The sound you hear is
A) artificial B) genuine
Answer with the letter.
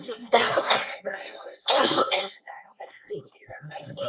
A